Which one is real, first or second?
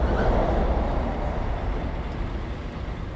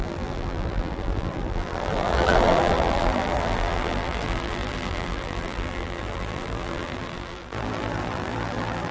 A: first